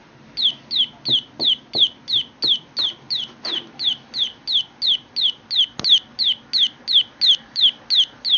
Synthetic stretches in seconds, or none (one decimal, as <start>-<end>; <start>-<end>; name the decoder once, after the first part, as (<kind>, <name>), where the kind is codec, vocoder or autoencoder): none